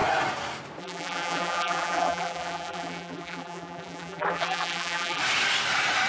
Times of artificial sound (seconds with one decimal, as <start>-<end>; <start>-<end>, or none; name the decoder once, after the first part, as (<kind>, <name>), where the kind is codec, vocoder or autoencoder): 0.8-5.2 (vocoder, BigVGAN v2)